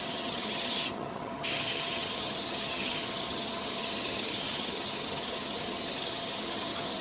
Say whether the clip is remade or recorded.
remade